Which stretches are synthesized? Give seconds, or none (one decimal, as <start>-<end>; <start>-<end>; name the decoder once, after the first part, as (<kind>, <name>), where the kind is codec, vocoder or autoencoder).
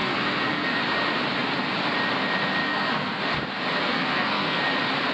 0.0-0.8 (codec, SNAC); 2.6-3.2; 3.9-4.6